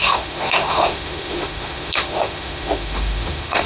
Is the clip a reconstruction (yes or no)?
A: yes